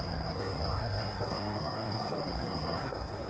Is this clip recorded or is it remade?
remade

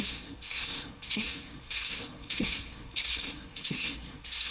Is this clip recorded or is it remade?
remade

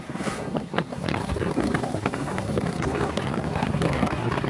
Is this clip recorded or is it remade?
remade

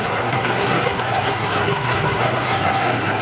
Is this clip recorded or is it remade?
remade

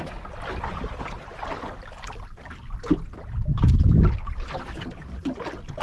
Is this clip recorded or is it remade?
recorded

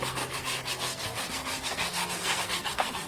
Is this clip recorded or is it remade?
remade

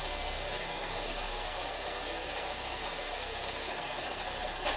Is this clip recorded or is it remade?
remade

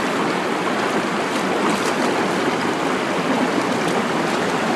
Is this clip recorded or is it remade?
recorded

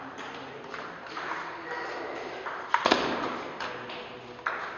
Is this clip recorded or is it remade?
recorded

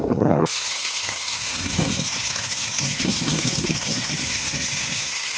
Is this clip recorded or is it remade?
remade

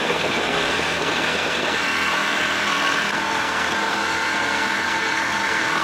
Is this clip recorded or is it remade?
remade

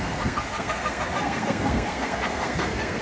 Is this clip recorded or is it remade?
remade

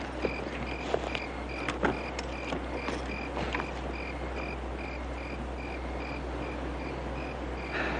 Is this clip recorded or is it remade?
recorded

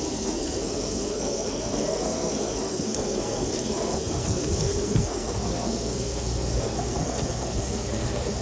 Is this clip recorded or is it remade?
remade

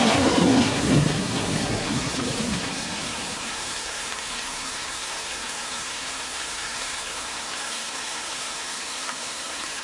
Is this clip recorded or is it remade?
remade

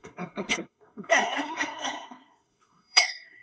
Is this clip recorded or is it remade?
remade